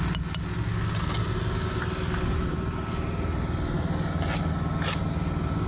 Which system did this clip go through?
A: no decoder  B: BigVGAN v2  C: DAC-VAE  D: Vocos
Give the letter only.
A